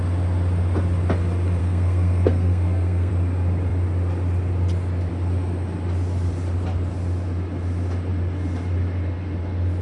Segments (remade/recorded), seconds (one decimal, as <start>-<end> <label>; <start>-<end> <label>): 0.0-1.6 recorded; 1.6-3.1 remade; 3.1-9.8 recorded